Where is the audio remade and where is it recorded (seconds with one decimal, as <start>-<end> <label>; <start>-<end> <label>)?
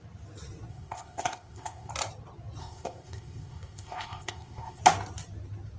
0.0-0.7 recorded; 0.7-1.9 remade; 1.9-2.6 recorded; 2.6-4.8 remade; 4.8-5.8 recorded